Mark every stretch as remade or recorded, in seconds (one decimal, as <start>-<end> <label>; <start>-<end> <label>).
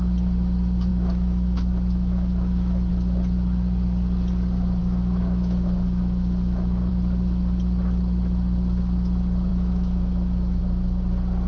0.0-0.9 recorded; 0.9-2.9 remade; 2.9-4.8 recorded; 4.8-6.9 remade; 6.9-9.5 recorded; 9.5-10.6 remade; 10.6-11.5 recorded